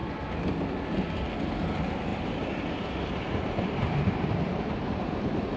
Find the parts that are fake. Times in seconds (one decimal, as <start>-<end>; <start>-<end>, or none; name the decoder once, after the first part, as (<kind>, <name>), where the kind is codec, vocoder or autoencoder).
2.1-5.6 (vocoder, BigVGAN v2)